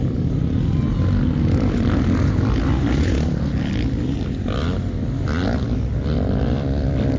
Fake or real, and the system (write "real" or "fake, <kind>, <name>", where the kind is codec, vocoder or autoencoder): real